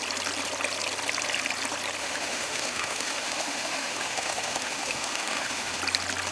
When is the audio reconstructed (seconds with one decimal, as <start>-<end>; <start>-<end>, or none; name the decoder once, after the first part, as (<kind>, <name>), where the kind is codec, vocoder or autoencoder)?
2.0-5.8 (autoencoder, DAC-VAE)